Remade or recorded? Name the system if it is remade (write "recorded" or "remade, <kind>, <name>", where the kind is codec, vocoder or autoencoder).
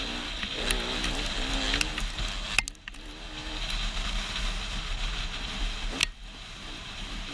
recorded